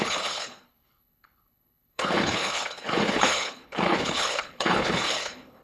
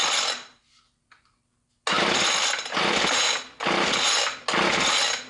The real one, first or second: second